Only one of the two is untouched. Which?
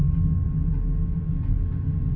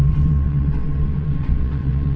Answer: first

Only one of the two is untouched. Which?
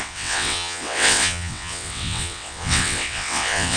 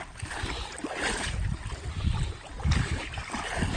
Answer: second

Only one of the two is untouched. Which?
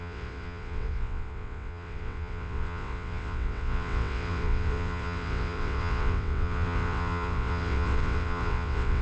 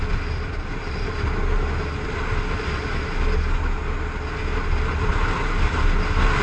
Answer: second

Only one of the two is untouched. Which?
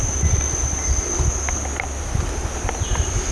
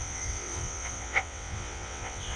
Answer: first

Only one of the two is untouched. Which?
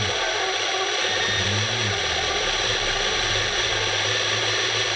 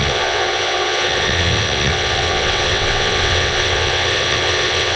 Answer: first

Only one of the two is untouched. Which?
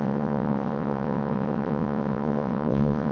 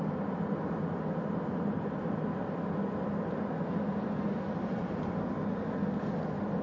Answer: second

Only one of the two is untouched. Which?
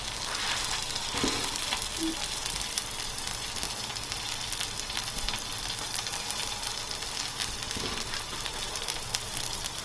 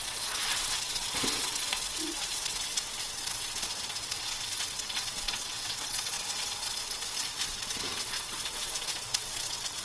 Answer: first